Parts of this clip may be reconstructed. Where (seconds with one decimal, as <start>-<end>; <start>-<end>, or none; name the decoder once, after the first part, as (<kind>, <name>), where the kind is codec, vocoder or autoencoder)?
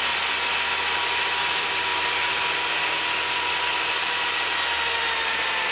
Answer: none